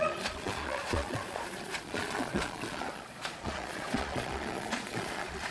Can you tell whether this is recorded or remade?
remade